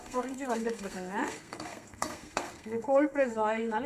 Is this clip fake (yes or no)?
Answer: yes